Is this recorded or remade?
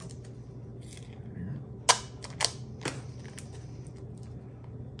recorded